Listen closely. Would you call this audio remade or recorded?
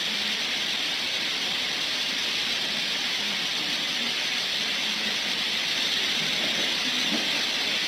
remade